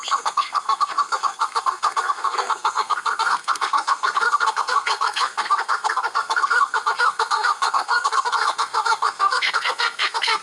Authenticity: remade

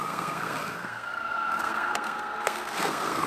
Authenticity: remade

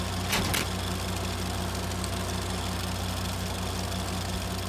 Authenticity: recorded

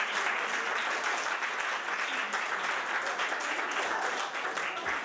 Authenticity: recorded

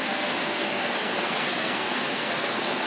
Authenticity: remade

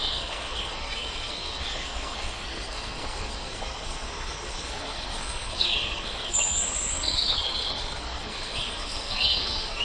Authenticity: remade